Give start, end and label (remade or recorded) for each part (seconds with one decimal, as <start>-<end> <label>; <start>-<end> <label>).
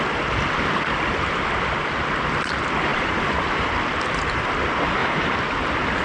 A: 0.0-2.9 recorded; 2.9-4.3 remade; 4.3-6.0 recorded